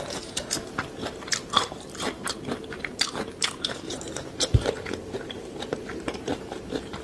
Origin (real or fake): fake